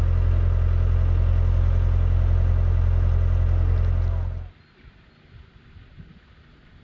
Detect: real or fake real